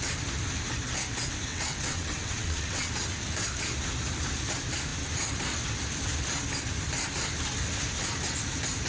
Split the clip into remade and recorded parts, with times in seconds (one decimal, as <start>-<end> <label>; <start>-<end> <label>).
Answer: 0.0-1.5 recorded; 1.5-2.9 remade; 2.9-8.9 recorded